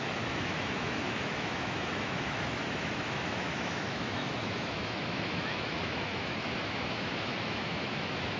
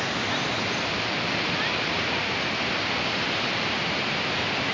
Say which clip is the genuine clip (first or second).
second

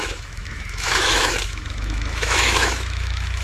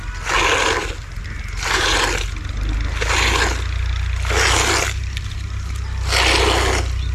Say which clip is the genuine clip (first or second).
second